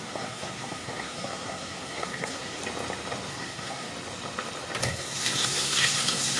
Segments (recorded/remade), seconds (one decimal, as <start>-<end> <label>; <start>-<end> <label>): 0.0-2.6 remade; 2.6-3.3 recorded; 3.3-3.9 remade; 3.9-4.8 recorded; 4.8-6.4 remade